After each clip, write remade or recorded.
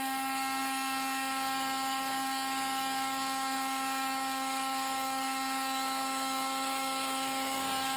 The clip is remade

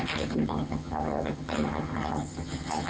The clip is remade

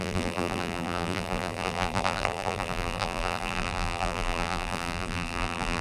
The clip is remade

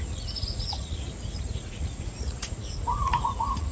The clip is remade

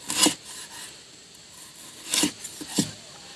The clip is recorded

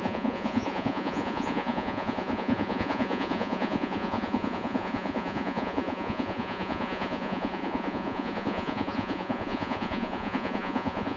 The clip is remade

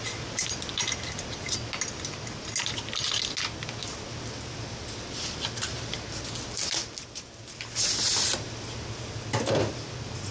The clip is recorded